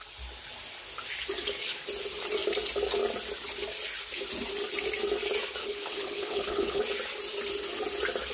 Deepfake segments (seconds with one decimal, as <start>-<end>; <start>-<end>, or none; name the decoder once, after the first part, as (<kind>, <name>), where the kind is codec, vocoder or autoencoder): 5.6-6.8 (codec, HILCodec)